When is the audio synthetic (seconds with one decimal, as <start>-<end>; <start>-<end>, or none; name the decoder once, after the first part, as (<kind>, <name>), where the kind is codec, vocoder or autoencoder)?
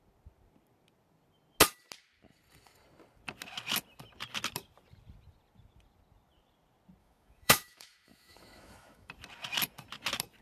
7.0-9.1 (autoencoder, DAC-VAE)